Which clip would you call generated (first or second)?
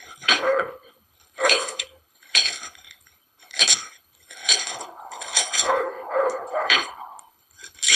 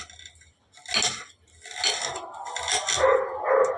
first